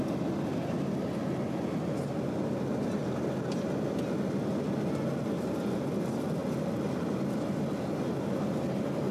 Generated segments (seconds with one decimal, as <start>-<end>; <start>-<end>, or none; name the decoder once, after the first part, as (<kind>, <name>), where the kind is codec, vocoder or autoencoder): none